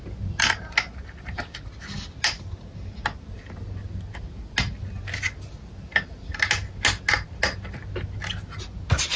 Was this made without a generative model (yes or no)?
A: yes